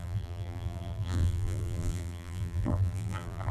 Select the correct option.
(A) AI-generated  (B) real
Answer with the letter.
A